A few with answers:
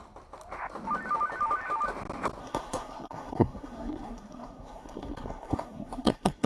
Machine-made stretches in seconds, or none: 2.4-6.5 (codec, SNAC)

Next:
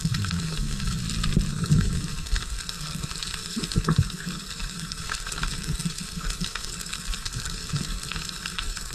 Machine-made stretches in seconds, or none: 0.0-1.0 (codec, SNAC); 1.5-8.9

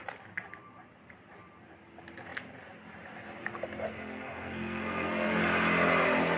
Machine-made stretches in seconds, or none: 3.9-5.4 (codec, SNAC)

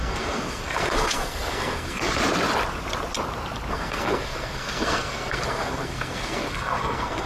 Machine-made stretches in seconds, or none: 0.0-2.1 (codec, SNAC); 3.7-7.3

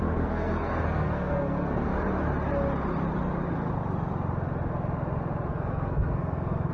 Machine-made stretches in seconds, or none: 0.0-1.9 (codec, SNAC); 5.5-6.7